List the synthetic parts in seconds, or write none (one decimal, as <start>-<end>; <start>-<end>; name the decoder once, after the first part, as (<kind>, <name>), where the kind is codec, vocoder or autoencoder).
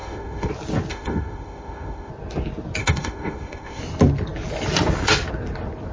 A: 0.0-0.5 (autoencoder, DAC-VAE); 0.9-2.1; 2.8-3.8